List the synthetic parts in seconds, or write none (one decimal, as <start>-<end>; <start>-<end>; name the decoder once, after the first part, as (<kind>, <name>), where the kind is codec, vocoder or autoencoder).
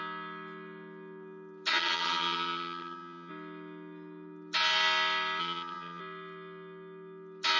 1.7-3.3 (vocoder, HiFi-GAN); 5.4-6.0